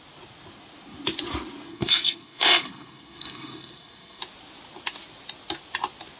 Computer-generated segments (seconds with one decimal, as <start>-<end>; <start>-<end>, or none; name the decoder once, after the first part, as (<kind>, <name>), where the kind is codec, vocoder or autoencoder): 1.7-4.2 (codec, SNAC)